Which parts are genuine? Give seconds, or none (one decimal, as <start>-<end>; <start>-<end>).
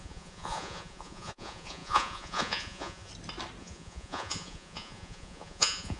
3.1-3.6